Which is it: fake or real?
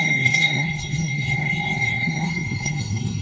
fake